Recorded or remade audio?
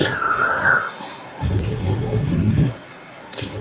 remade